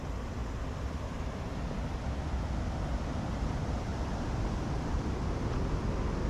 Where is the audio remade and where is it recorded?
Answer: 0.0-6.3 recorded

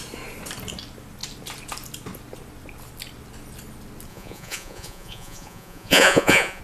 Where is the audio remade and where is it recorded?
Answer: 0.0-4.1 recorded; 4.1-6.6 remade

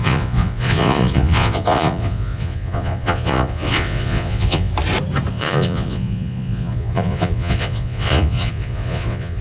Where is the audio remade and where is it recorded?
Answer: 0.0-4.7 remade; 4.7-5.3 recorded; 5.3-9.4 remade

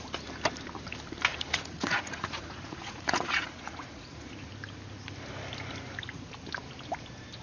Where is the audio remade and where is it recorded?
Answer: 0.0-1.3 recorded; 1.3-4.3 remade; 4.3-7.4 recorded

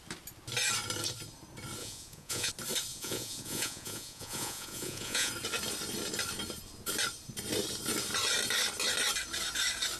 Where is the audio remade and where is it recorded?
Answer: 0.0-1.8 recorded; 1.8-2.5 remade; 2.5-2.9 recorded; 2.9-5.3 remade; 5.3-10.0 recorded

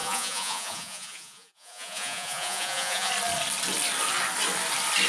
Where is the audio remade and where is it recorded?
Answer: 0.0-3.1 remade; 3.1-5.1 recorded

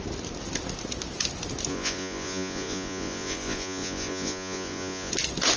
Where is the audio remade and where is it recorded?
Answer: 0.0-1.7 recorded; 1.7-5.1 remade; 5.1-5.6 recorded